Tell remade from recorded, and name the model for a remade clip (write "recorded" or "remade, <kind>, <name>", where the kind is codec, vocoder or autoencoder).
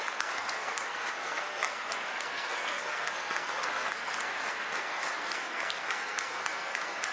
remade, codec, SNAC